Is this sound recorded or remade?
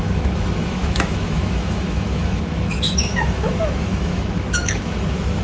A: remade